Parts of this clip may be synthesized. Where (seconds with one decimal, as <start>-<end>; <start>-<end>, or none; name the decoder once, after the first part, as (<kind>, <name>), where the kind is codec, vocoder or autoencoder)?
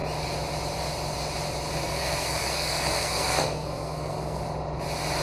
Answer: 1.8-4.4 (codec, SNAC)